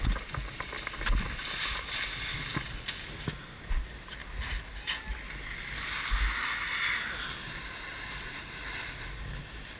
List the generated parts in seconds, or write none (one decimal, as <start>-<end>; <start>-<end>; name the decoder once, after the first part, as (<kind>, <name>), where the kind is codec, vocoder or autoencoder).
none